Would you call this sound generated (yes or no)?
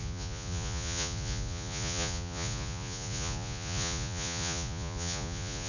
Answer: yes